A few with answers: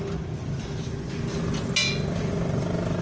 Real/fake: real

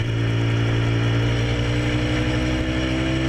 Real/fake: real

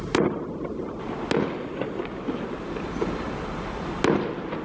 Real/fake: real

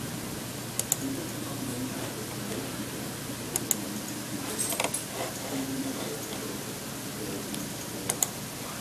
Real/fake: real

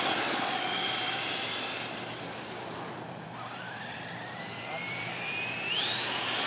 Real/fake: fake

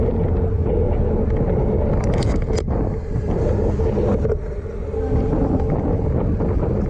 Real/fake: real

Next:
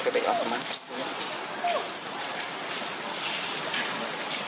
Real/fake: real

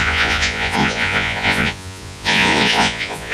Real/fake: fake